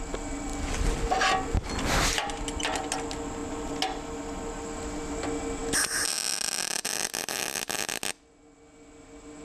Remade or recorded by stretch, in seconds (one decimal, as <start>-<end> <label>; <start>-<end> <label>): 0.0-9.4 recorded

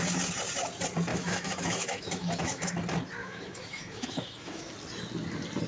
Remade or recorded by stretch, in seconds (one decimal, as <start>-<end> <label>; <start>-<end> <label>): 0.0-1.1 recorded; 1.1-2.7 remade; 2.7-3.2 recorded; 3.2-4.7 remade; 4.7-5.7 recorded

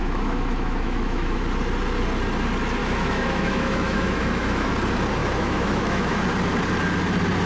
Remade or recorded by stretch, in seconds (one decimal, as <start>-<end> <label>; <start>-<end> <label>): 0.0-1.4 remade; 1.4-2.8 recorded; 2.8-4.7 remade; 4.7-5.2 recorded; 5.2-6.2 remade; 6.2-7.5 recorded